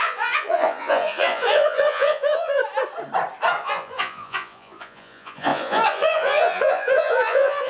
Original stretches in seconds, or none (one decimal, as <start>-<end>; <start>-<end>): 2.6-3.6